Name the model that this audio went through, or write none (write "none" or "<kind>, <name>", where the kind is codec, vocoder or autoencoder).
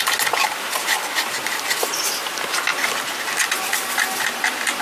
none